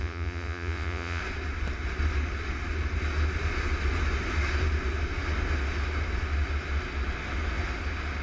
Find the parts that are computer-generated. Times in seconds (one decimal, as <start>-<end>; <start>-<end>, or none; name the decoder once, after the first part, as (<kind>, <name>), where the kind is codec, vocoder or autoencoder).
0.0-1.2 (vocoder, Vocos)